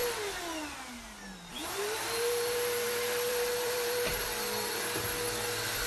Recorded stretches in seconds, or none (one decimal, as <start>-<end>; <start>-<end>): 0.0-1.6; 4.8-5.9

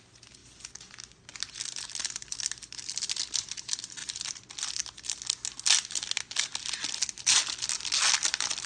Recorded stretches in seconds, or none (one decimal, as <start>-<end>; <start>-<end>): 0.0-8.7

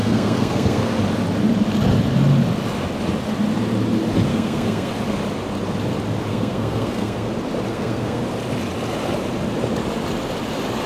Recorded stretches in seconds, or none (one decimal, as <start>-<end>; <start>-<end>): 1.0-4.3; 4.9-6.3; 7.3-7.7; 8.2-10.9

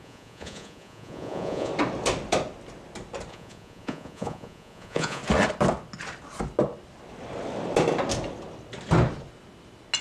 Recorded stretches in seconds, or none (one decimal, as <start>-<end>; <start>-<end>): 1.7-3.3; 5.2-10.0

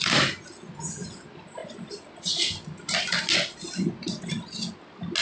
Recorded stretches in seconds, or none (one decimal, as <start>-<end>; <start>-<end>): 0.0-5.2